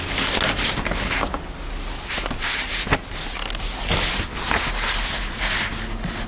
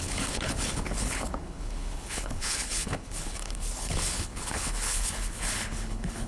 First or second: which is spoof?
second